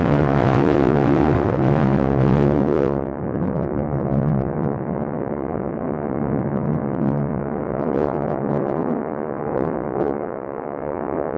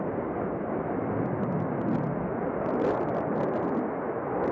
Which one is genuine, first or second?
second